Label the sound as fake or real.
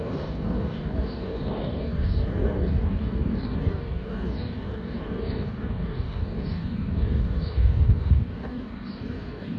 fake